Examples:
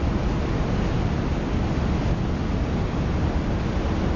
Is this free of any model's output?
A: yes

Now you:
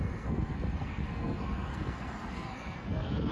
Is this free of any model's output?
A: no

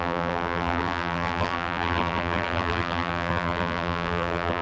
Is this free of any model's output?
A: no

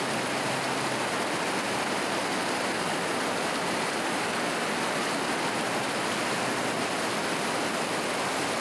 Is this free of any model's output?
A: yes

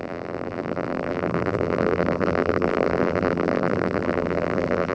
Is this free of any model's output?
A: no